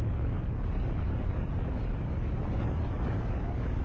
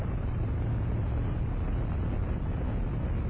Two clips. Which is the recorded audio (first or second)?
second